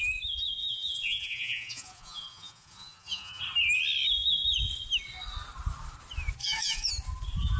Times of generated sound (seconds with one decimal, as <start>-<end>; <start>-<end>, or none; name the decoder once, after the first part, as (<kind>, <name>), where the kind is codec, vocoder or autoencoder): 0.6-3.4 (vocoder, Vocos); 6.4-6.9